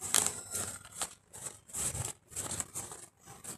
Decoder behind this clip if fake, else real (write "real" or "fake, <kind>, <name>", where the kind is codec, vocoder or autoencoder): fake, vocoder, BigVGAN v2